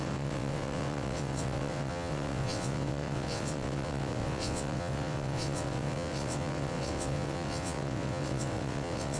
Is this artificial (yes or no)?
yes